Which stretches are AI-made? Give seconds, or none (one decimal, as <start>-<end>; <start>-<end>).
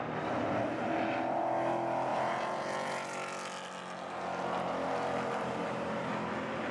none